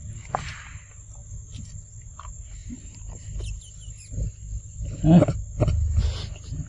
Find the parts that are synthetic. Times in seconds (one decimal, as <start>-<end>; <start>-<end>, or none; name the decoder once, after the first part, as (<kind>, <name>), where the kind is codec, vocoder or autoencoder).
none